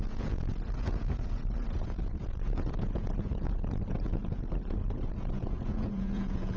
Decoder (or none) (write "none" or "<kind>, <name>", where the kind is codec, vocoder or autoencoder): vocoder, Vocos